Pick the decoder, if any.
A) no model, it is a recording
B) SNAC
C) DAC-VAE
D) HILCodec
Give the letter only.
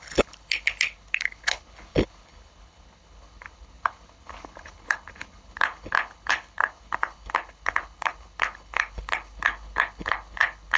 D